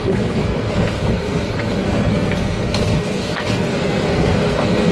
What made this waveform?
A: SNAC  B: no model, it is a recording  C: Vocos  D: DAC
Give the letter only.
A